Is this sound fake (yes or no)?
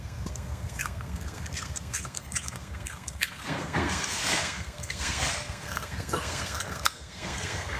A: yes